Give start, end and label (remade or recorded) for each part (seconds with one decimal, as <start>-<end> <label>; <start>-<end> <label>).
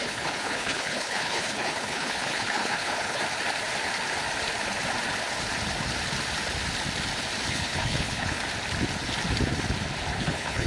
0.0-3.2 remade; 3.2-7.5 recorded; 7.5-8.4 remade; 8.4-10.2 recorded; 10.2-10.7 remade